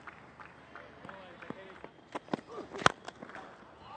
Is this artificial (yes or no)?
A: no